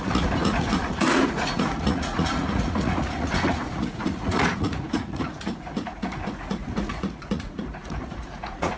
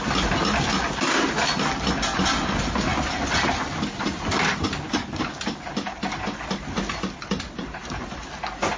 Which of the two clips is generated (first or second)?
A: first